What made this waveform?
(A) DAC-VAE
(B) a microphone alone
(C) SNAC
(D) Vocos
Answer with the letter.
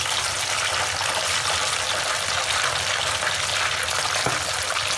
B